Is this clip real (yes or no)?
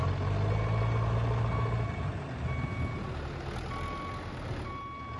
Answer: yes